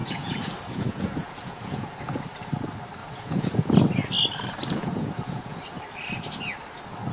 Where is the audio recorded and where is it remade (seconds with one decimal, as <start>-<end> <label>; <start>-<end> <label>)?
0.0-2.2 remade; 2.2-3.0 recorded; 3.0-3.7 remade; 3.7-4.8 recorded; 4.8-5.6 remade; 5.6-7.1 recorded